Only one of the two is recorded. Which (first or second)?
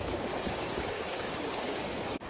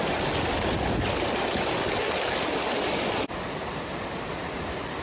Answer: second